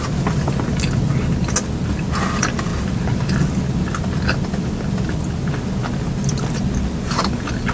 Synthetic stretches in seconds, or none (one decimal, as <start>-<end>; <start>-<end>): none